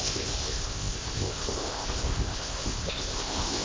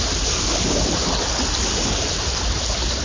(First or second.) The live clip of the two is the second